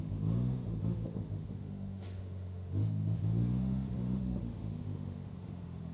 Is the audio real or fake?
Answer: fake